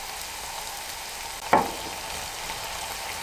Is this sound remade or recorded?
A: recorded